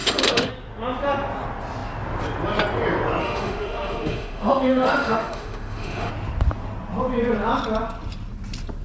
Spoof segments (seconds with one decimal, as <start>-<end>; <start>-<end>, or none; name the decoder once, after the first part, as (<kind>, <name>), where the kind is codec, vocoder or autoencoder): 0.0-0.5 (autoencoder, DAC-VAE); 3.2-6.1